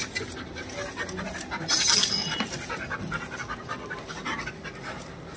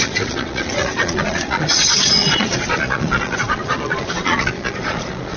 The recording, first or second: first